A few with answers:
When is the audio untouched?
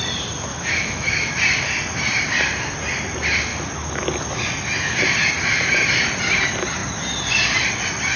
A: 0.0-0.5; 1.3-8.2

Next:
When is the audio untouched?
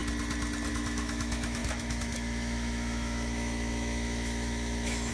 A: 0.0-0.7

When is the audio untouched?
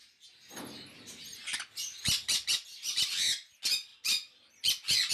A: 0.0-5.1